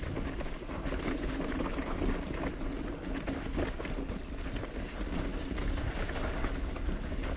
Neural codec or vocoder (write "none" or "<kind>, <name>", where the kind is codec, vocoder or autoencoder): none